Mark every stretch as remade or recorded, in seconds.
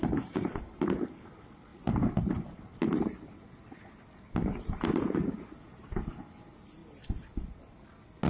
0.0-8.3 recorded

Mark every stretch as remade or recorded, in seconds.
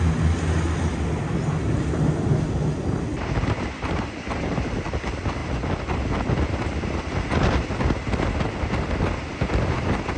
0.0-10.2 recorded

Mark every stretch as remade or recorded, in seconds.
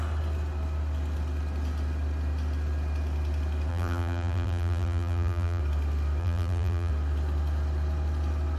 0.0-3.7 recorded; 3.7-5.6 remade; 5.6-6.2 recorded; 6.2-6.9 remade; 6.9-8.6 recorded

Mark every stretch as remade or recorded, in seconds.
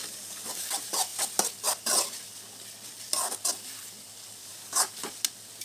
0.0-0.7 remade; 0.7-4.4 recorded; 4.4-4.9 remade; 4.9-5.6 recorded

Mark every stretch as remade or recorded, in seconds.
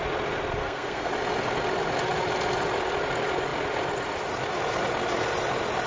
0.0-0.6 recorded; 0.6-1.1 remade; 1.1-5.9 recorded